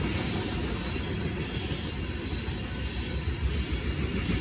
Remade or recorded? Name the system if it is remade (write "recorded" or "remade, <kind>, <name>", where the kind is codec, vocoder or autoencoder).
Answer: recorded